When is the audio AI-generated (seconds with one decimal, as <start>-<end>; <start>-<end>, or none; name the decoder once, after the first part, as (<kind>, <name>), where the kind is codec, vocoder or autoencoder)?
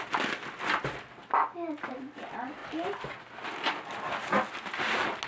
none